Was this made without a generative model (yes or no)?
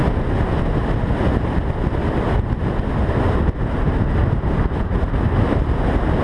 yes